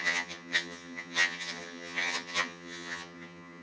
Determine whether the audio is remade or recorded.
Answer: remade